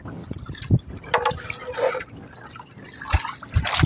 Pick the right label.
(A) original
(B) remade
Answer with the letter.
A